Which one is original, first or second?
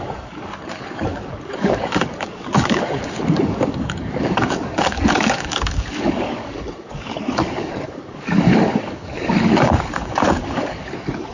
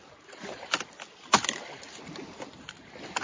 second